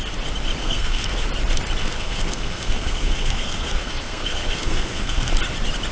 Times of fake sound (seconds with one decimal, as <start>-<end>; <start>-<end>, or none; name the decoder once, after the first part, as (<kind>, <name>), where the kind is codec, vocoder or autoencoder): 0.6-1.3 (codec, SNAC); 1.8-5.3